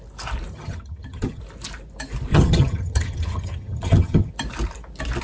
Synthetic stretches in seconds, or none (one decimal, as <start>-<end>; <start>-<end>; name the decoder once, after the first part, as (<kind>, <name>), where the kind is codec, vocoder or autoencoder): 0.5-1.4 (vocoder, HiFi-GAN); 2.3-4.3